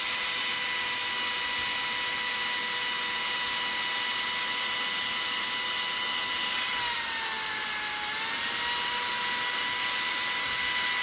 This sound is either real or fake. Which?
real